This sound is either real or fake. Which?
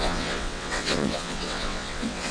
fake